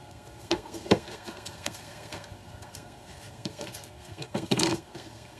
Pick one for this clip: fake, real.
fake